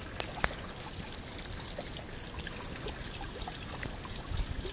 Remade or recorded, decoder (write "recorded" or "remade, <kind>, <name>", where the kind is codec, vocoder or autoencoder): recorded